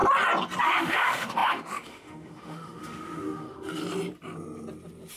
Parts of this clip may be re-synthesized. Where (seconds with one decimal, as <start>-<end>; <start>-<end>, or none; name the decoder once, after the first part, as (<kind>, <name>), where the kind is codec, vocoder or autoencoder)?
0.6-3.8 (autoencoder, DAC-VAE)